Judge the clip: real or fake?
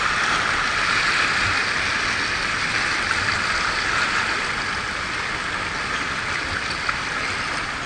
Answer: real